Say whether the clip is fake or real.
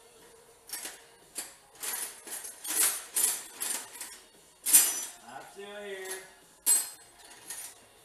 real